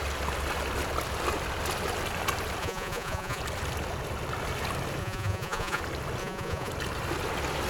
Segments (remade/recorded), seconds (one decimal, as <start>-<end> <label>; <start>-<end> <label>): 0.0-2.6 recorded; 2.6-3.4 remade; 3.4-5.0 recorded; 5.0-5.8 remade; 5.8-6.2 recorded; 6.2-6.7 remade; 6.7-7.7 recorded